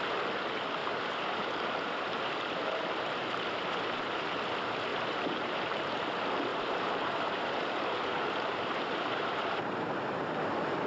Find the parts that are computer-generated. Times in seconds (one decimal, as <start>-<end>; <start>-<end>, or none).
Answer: 0.8-4.4; 4.9-5.8; 6.5-9.9